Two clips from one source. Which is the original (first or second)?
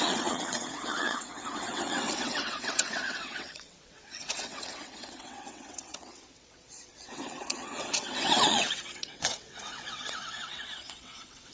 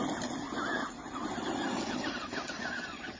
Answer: second